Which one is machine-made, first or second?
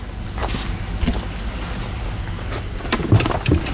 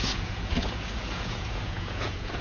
second